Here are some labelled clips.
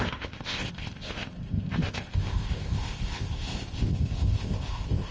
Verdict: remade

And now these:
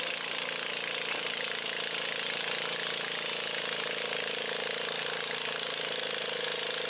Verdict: recorded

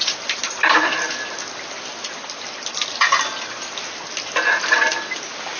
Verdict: recorded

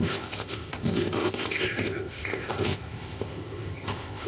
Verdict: remade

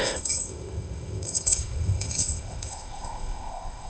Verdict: remade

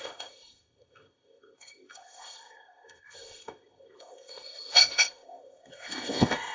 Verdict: remade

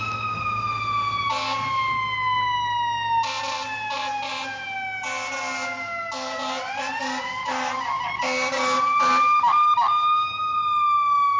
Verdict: recorded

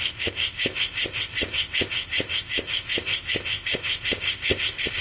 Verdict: remade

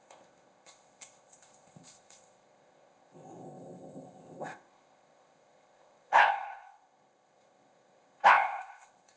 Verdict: remade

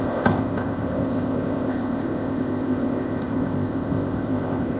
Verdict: remade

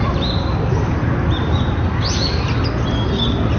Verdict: recorded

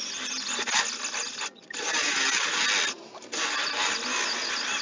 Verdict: recorded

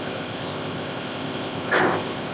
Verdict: remade